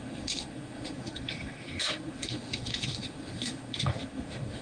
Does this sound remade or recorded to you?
remade